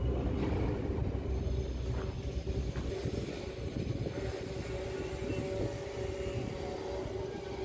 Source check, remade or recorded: recorded